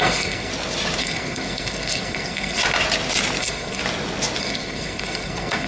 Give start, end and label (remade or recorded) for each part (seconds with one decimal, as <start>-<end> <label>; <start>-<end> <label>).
0.0-0.5 remade; 0.5-1.0 recorded; 1.0-2.6 remade; 2.6-3.4 recorded; 3.4-3.8 remade; 3.8-4.4 recorded; 4.4-5.7 remade